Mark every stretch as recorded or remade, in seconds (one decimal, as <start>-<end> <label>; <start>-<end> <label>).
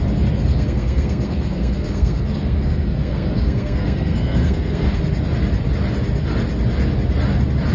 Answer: 0.0-0.5 recorded; 0.5-5.0 remade; 5.0-7.7 recorded